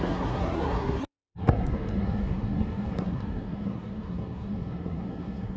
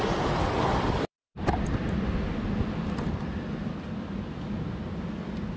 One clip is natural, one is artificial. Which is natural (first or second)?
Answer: second